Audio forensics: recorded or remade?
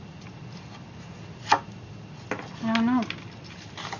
recorded